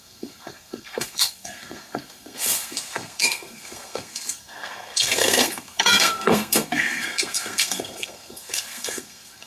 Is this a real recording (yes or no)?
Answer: no